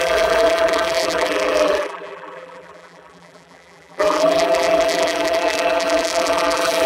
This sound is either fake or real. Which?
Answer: fake